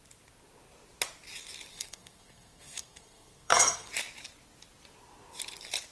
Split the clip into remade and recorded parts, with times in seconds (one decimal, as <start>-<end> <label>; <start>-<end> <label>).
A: 0.0-1.7 recorded; 1.7-3.9 remade; 3.9-5.9 recorded